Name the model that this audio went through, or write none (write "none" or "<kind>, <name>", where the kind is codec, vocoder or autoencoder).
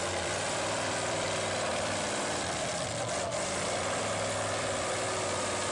vocoder, BigVGAN v2